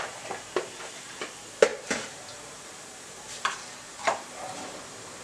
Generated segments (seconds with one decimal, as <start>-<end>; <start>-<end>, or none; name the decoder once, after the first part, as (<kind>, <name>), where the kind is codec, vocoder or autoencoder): 1.7-4.8 (vocoder, BigVGAN v2)